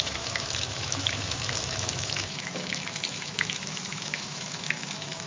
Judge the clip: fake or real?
fake